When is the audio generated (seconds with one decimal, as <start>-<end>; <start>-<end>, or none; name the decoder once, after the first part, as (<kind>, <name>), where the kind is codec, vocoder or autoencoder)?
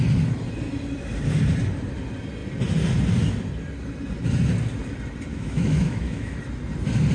5.3-6.4 (autoencoder, DAC-VAE)